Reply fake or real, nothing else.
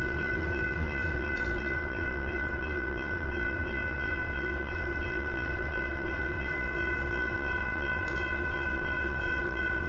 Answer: fake